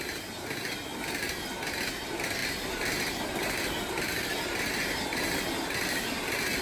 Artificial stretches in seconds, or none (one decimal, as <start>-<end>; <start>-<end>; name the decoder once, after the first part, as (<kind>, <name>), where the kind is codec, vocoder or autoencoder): none